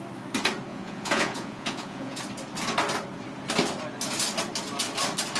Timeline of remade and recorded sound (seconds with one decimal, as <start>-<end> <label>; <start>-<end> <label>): 0.0-0.7 recorded; 0.7-2.2 remade; 2.2-5.4 recorded